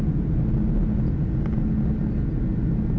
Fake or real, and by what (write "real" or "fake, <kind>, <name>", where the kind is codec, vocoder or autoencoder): real